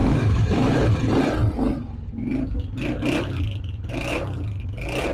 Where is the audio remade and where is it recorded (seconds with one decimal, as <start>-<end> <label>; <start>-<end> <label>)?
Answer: 0.0-0.9 remade; 0.9-5.1 recorded